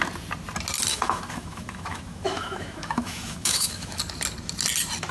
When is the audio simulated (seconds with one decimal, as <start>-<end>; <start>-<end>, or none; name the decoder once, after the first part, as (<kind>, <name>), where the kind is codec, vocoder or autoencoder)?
0.9-4.0 (autoencoder, DAC-VAE)